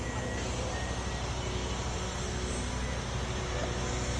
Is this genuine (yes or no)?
yes